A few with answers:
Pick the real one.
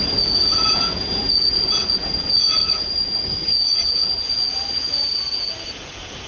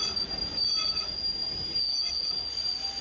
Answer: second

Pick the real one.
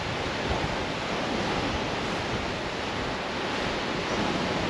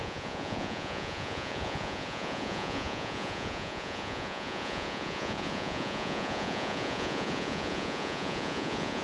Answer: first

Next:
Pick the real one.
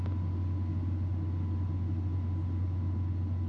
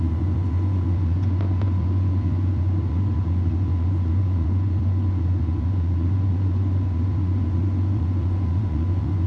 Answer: first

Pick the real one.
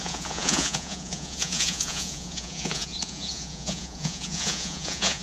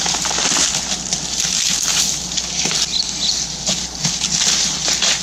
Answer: second